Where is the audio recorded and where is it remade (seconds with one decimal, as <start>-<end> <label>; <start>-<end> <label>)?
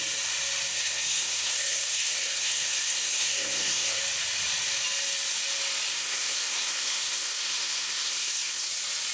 0.0-0.7 recorded; 0.7-4.0 remade; 4.0-5.9 recorded; 5.9-8.7 remade; 8.7-9.1 recorded